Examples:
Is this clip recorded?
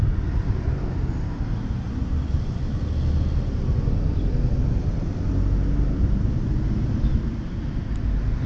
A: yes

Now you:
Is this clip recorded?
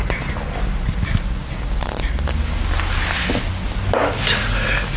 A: yes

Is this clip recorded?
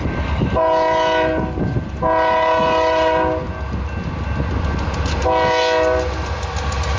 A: yes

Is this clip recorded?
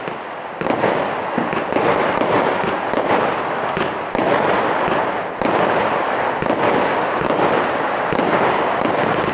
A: yes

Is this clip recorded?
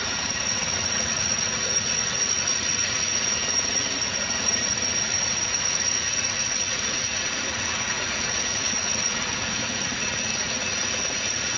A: no